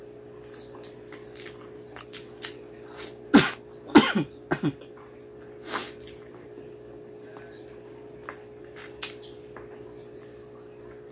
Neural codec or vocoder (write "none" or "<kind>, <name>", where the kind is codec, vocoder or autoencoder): none